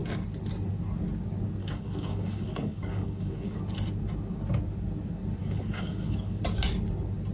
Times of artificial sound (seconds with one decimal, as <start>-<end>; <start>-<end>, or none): 1.6-3.6; 5.4-6.4